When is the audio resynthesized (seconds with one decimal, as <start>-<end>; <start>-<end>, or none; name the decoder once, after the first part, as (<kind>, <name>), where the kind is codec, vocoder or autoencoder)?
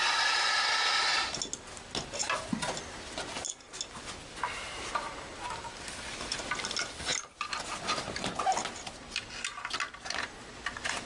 none